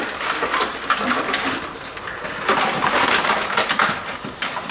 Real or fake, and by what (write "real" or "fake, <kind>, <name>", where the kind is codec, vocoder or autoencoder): real